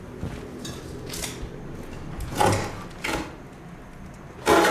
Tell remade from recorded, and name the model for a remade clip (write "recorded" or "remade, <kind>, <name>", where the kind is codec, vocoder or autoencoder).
recorded